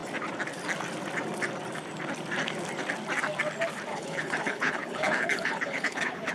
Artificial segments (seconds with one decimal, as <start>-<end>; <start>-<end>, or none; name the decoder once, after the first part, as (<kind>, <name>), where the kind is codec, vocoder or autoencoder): 3.9-6.3 (codec, HILCodec)